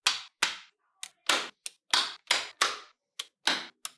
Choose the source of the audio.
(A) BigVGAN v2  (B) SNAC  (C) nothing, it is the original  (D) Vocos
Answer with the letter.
C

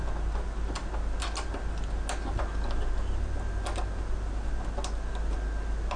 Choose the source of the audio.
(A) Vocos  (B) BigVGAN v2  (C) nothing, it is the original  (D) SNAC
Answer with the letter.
C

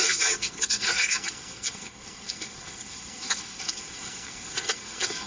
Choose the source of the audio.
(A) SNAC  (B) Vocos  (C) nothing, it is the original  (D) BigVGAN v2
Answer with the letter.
A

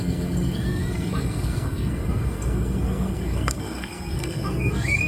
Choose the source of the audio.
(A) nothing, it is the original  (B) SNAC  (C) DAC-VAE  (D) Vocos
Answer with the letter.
B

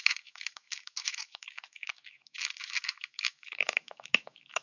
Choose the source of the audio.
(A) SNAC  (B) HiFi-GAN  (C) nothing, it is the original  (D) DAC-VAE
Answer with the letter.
D